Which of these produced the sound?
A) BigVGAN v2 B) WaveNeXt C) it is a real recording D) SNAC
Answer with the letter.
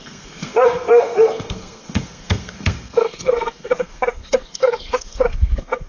D